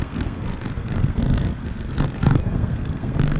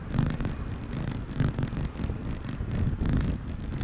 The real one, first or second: second